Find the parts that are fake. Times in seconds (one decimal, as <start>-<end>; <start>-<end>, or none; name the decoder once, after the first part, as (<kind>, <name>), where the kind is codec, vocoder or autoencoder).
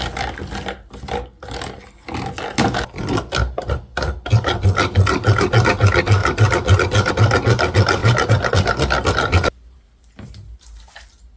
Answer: none